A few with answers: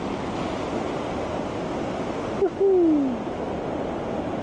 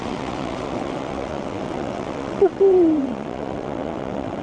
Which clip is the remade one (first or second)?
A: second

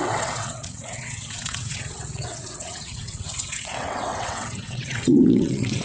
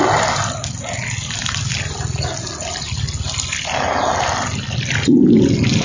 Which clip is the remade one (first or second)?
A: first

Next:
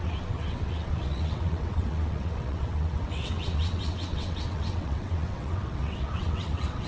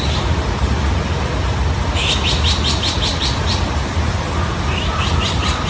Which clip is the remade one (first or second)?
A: first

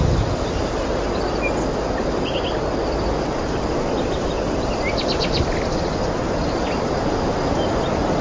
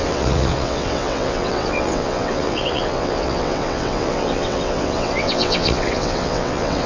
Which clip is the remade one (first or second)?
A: second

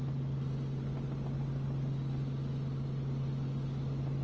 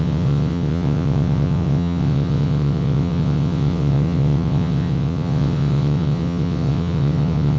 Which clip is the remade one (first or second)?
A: second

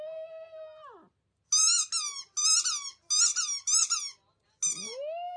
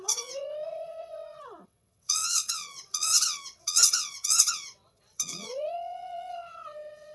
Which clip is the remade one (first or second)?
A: second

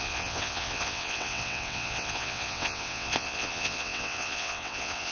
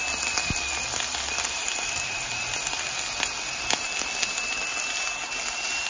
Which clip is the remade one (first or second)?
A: first